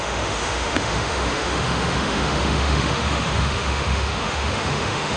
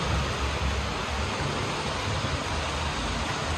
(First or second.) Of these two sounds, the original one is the second